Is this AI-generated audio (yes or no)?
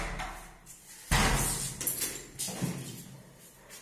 no